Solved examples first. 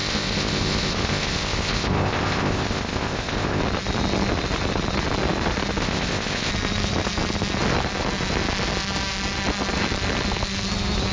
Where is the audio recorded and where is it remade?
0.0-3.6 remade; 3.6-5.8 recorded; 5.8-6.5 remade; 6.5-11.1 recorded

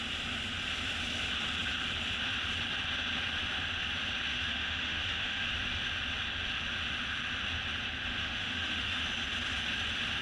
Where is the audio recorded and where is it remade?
0.0-4.3 recorded; 4.3-5.5 remade; 5.5-8.2 recorded; 8.2-9.0 remade; 9.0-10.2 recorded

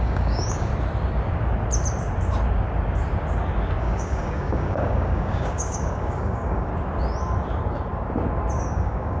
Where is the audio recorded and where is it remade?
0.0-0.7 remade; 0.7-3.8 recorded; 3.8-6.7 remade; 6.7-8.6 recorded; 8.6-9.2 remade

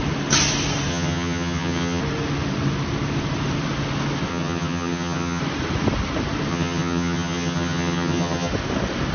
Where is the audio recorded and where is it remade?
0.0-0.9 recorded; 0.9-2.0 remade; 2.0-4.3 recorded; 4.3-5.4 remade; 5.4-6.5 recorded; 6.5-8.5 remade; 8.5-9.1 recorded

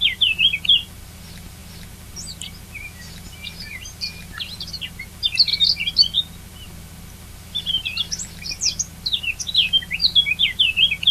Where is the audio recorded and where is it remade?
0.0-11.1 recorded

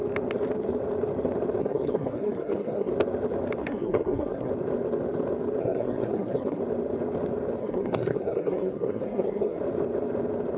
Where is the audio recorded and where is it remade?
0.0-1.6 recorded; 1.6-2.9 remade; 2.9-3.6 recorded; 3.6-4.5 remade; 4.5-5.6 recorded; 5.6-6.6 remade; 6.6-7.6 recorded; 7.6-9.6 remade; 9.6-10.6 recorded

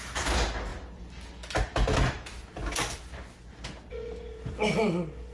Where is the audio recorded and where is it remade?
0.0-5.3 recorded